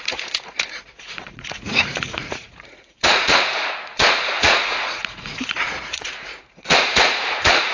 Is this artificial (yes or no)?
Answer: yes